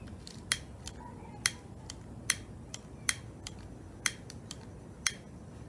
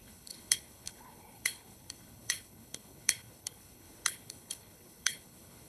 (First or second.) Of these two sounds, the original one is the first